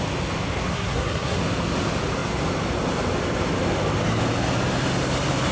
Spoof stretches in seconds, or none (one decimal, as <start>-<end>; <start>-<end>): 0.7-1.4